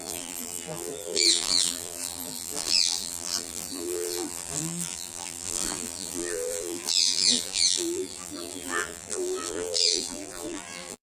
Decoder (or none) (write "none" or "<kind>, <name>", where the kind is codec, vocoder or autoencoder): vocoder, BigVGAN v2